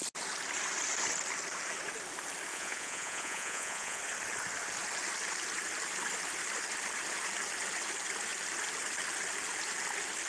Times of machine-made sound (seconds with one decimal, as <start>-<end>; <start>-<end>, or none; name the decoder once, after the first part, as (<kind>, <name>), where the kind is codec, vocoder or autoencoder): 2.5-4.0 (vocoder, Vocos)